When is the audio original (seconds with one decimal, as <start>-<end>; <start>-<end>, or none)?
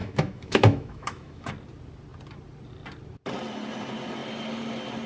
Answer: 1.5-5.1